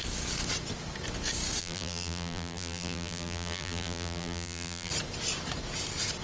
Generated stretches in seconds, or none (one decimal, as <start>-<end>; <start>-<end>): 1.6-4.9